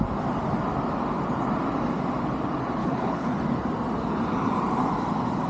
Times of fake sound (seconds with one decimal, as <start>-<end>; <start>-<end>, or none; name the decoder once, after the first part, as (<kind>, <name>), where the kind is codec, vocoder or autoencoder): 2.8-3.3 (codec, HILCodec)